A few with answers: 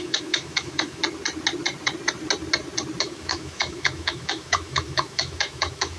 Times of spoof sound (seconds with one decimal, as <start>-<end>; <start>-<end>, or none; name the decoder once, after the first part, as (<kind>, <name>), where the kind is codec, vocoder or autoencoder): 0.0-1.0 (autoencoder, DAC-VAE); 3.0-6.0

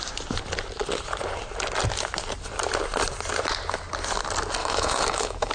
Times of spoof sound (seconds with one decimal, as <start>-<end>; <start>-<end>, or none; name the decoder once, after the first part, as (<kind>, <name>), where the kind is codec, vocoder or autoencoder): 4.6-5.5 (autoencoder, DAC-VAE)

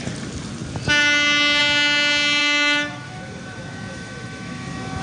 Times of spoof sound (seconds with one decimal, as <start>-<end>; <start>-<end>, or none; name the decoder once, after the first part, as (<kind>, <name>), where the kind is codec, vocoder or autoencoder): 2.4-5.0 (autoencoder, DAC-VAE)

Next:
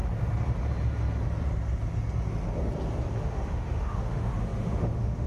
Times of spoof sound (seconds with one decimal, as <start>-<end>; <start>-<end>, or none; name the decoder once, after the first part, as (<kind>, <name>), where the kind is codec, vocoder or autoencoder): 3.2-5.3 (autoencoder, DAC-VAE)

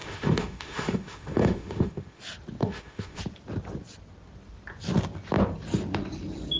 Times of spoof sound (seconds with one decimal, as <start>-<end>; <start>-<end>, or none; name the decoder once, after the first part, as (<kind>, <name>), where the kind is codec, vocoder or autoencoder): 0.0-2.2 (autoencoder, DAC-VAE); 2.6-3.2